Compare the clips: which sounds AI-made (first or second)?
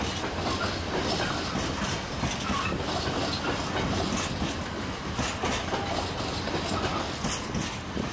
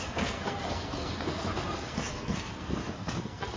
second